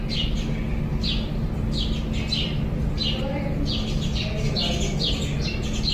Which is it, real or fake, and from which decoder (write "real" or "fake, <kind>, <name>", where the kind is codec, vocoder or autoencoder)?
real